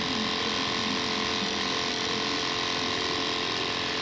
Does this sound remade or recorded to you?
recorded